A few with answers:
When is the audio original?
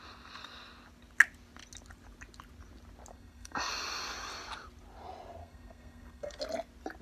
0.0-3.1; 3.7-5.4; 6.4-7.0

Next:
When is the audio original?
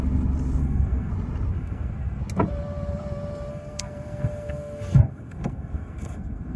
0.0-0.6; 1.1-1.5; 2.2-3.5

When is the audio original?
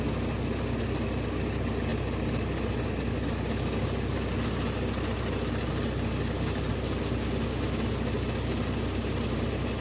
0.0-9.8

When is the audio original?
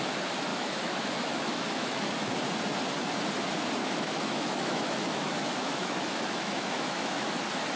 0.0-0.5; 2.3-3.8; 7.3-7.8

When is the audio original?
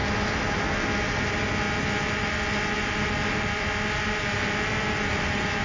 0.0-5.6